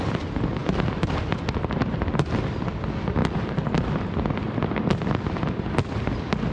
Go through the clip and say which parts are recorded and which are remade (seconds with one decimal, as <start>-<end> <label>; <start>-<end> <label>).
0.0-6.5 recorded